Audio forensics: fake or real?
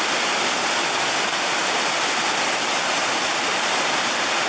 real